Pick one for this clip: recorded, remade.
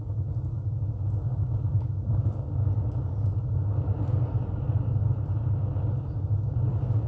recorded